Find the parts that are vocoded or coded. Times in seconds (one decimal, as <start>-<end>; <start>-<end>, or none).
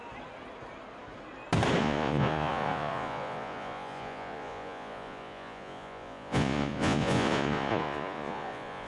1.8-8.9